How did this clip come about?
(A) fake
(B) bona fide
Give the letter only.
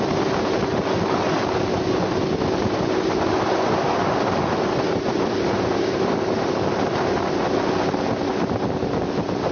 B